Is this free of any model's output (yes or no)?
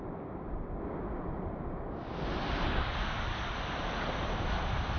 yes